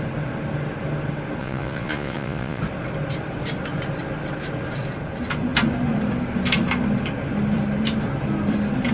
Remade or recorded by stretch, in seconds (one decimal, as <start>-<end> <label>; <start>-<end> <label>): 0.0-1.4 recorded; 1.4-2.6 remade; 2.6-8.9 recorded